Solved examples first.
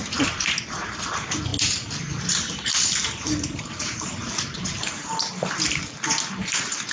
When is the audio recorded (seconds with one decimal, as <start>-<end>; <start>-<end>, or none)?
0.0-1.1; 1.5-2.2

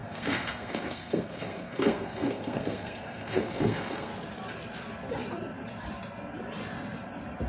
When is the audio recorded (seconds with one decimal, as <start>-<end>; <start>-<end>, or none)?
4.1-7.5

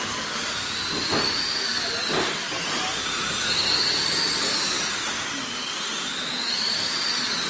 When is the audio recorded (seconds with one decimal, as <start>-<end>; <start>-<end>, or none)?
0.0-7.5

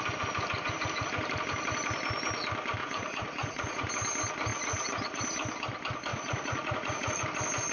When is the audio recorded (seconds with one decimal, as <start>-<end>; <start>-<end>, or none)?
0.0-2.8; 3.9-4.5; 5.2-6.1; 7.2-7.7

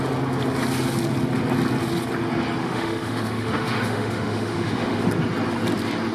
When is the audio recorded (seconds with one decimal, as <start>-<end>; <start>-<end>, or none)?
0.0-2.6; 5.1-6.1

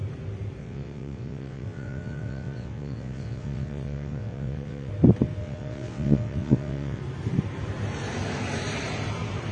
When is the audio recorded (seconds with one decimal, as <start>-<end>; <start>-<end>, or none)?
0.0-0.6; 4.9-5.4; 7.0-9.5